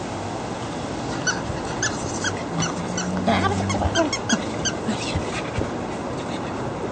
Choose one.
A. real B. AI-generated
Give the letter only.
A